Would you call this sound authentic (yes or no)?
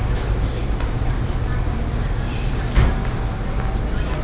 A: yes